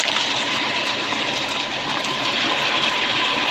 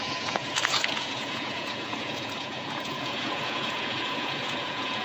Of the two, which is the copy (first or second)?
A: second